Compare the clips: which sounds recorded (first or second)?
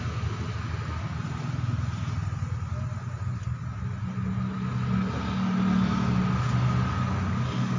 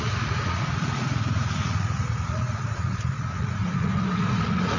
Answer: first